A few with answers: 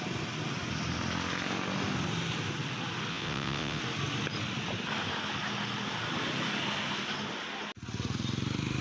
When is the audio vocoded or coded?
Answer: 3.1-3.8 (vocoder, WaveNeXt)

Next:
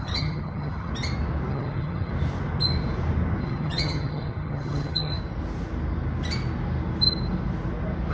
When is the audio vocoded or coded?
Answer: 0.0-0.9 (vocoder, HiFi-GAN); 1.5-2.1; 3.4-5.2

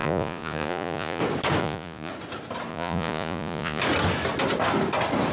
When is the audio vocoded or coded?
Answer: 0.0-1.2 (vocoder, Vocos); 1.6-2.1; 2.7-3.8

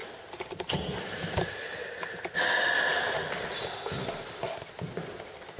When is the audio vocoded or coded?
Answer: none

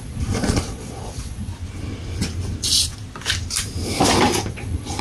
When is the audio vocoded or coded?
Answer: 0.0-1.5 (vocoder, Vocos); 4.5-5.0

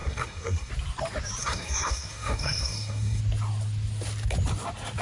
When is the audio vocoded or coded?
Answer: 0.0-0.7 (codec, SNAC); 1.4-3.2

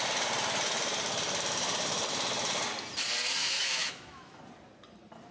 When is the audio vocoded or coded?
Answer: 3.4-4.4 (autoencoder, DAC-VAE)